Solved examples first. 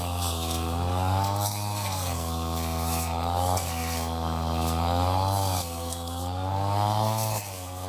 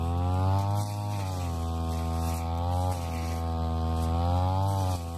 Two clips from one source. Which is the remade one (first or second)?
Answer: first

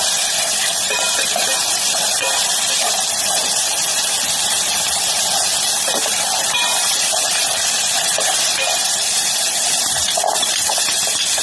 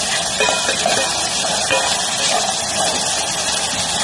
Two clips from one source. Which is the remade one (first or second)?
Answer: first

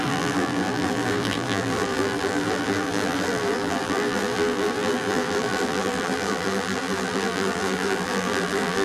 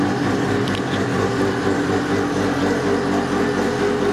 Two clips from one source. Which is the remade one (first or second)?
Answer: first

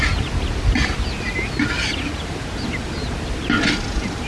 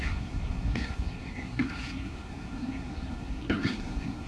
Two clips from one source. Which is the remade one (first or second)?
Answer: second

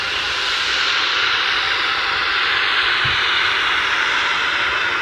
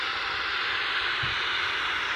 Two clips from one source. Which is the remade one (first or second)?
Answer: second